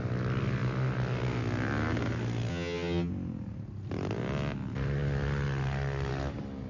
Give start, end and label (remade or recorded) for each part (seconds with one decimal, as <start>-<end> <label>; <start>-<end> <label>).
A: 0.0-2.5 recorded; 2.5-3.1 remade; 3.1-6.7 recorded